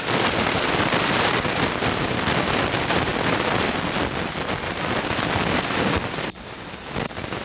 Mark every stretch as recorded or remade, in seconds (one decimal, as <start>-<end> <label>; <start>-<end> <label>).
0.0-7.4 remade